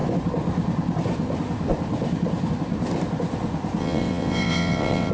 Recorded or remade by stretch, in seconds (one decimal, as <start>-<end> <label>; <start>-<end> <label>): 0.0-3.8 recorded; 3.8-5.1 remade